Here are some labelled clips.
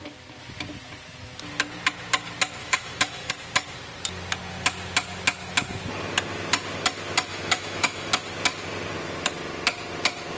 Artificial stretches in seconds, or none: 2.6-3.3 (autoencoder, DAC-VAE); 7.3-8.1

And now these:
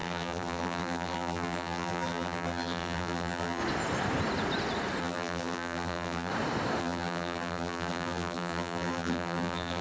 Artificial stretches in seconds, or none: 0.0-3.6 (vocoder, BigVGAN v2); 5.0-6.3; 6.8-9.8

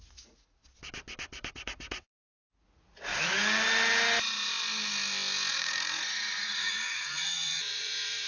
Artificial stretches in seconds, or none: 0.0-0.6 (vocoder, Vocos); 1.5-3.1; 5.5-8.3

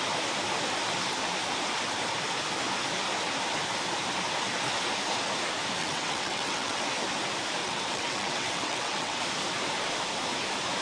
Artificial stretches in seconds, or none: 5.8-6.8 (vocoder, WaveNeXt); 7.6-9.2

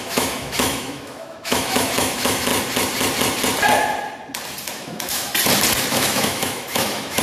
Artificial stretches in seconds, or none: 0.0-2.5 (autoencoder, DAC-VAE); 4.7-5.3; 5.9-7.2

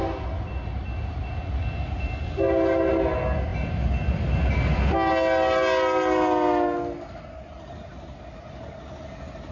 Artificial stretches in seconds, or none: none

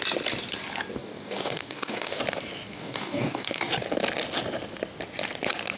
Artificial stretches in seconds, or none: 1.0-2.2 (codec, DAC); 2.7-3.7